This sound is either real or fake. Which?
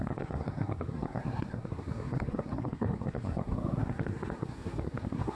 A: fake